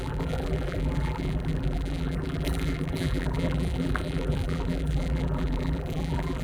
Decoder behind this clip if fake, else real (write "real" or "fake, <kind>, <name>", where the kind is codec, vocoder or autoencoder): fake, vocoder, BigVGAN v2